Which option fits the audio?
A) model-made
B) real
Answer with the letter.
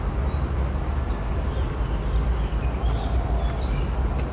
B